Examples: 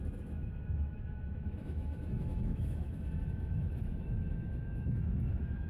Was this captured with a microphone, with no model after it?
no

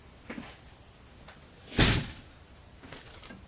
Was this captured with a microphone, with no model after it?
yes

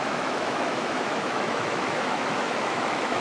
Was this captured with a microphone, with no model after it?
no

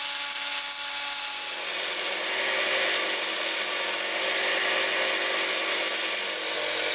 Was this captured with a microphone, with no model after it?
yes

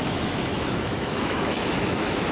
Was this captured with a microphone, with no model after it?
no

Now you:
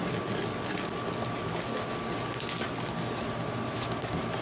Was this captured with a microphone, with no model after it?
yes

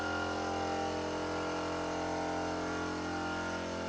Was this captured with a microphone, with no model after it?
yes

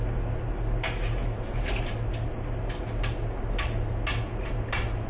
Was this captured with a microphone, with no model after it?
yes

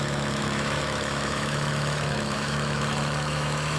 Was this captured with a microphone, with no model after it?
no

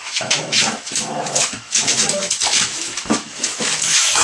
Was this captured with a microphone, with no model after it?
no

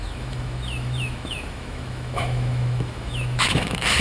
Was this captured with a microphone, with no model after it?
no